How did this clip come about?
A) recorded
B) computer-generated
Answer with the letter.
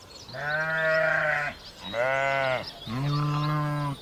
A